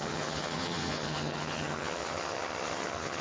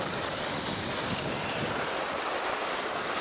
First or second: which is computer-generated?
first